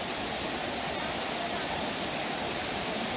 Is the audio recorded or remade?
recorded